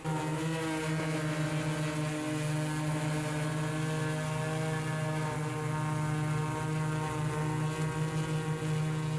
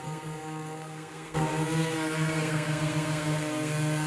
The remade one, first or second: second